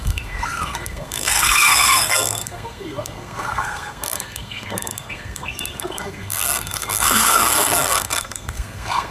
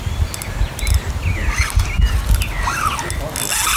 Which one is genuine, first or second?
second